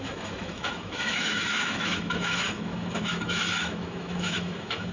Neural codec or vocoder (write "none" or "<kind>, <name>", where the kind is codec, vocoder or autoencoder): autoencoder, DAC-VAE